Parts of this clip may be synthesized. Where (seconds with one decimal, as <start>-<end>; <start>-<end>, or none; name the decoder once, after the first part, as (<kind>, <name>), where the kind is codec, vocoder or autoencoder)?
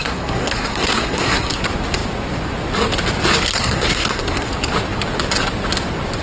0.0-1.6 (codec, SNAC); 3.5-4.5